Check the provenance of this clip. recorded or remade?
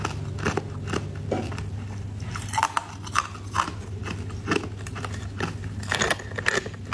recorded